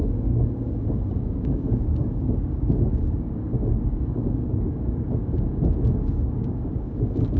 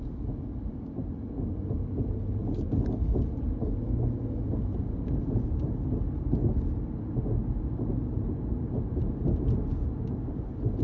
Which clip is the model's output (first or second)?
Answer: first